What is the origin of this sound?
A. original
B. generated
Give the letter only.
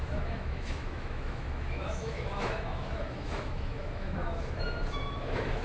B